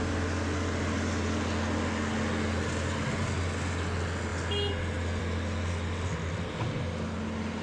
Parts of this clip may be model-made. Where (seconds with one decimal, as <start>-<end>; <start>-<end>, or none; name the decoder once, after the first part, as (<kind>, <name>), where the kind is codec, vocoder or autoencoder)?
none